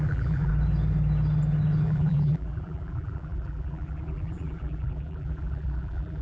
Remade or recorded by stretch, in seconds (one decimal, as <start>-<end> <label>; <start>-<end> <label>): 0.0-0.5 remade; 0.5-1.8 recorded; 1.8-6.2 remade

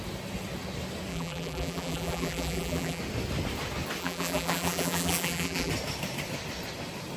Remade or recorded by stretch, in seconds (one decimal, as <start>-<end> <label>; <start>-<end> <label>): 0.0-1.1 recorded; 1.1-3.0 remade; 3.0-4.0 recorded; 4.0-5.7 remade; 5.7-7.2 recorded

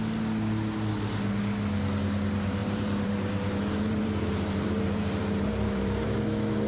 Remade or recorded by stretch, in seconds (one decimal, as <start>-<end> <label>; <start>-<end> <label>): 0.0-2.6 recorded; 2.6-6.1 remade; 6.1-6.7 recorded

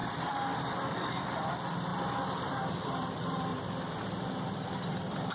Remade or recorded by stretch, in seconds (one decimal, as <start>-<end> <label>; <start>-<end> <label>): 0.0-0.7 recorded; 0.7-1.9 remade; 1.9-2.6 recorded; 2.6-3.5 remade; 3.5-5.3 recorded

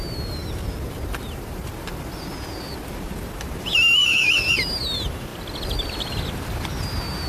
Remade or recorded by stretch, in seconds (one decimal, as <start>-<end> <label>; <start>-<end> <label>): 0.0-0.4 remade; 0.4-3.6 recorded; 3.6-5.3 remade; 5.3-7.3 recorded

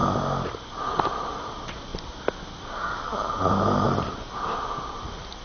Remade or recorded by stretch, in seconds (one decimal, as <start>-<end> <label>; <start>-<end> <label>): 0.0-1.3 recorded; 1.3-1.9 remade; 1.9-4.0 recorded; 4.0-5.4 remade

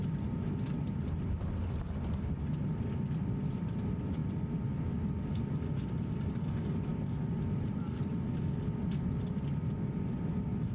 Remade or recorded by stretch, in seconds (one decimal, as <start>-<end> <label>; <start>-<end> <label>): 0.0-10.7 recorded